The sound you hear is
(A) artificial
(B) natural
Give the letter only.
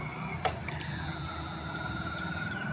B